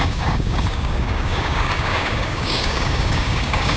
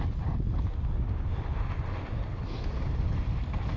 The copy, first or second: first